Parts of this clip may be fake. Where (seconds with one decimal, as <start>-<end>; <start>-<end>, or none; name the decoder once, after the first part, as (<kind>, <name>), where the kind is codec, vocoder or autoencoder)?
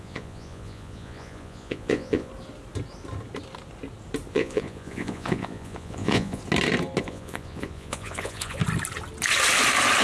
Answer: 0.0-2.3 (vocoder, Vocos); 4.3-6.4; 7.0-8.6